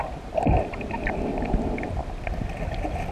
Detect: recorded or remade recorded